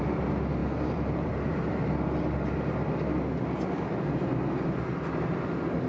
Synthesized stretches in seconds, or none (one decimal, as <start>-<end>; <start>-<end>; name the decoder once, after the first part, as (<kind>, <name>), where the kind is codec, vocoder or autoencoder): 0.6-1.7 (vocoder, BigVGAN v2)